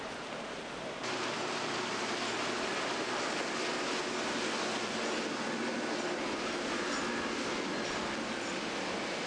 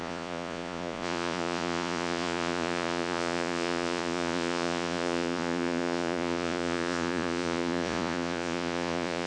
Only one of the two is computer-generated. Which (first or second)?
second